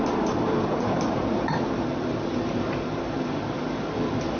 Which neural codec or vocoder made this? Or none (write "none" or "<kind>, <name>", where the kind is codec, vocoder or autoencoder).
vocoder, BigVGAN v2